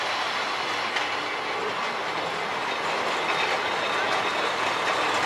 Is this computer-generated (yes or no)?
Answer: no